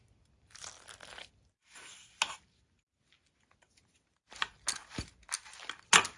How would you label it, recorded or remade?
recorded